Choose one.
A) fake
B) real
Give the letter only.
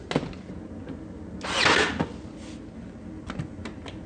B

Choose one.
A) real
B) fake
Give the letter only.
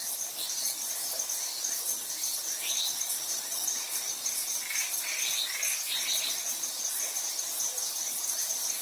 A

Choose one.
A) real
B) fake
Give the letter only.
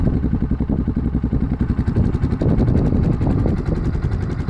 A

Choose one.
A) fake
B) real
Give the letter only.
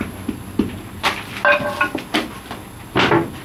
B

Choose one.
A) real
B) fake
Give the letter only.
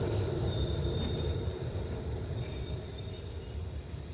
B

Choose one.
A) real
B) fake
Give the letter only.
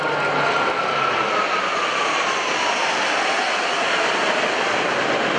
A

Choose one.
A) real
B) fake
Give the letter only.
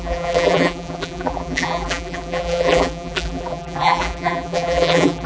B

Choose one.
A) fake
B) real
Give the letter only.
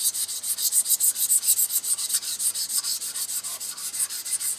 B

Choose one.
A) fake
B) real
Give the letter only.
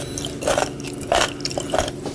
A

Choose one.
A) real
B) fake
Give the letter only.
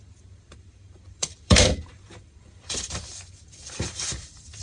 B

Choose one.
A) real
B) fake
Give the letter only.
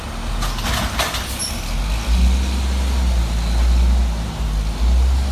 A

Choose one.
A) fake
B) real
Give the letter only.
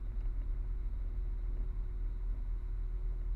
A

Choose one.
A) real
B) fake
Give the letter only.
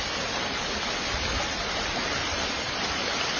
A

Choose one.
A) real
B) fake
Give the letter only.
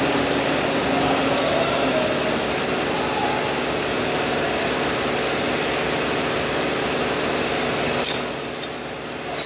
A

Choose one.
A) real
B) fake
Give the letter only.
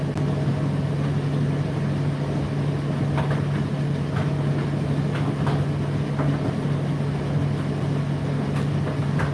A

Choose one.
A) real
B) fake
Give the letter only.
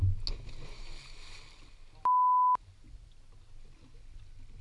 A